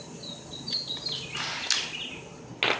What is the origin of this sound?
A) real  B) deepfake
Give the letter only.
A